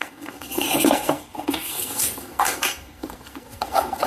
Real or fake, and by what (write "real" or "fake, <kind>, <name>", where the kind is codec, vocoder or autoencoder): fake, codec, SNAC